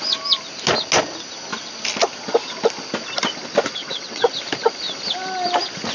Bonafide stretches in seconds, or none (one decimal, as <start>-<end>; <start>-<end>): 0.0-3.8; 4.3-5.9